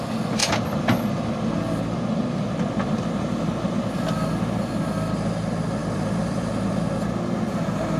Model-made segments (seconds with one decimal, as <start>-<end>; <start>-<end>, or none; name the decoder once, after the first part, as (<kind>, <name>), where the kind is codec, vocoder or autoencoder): 0.4-3.8 (vocoder, BigVGAN v2); 5.8-6.5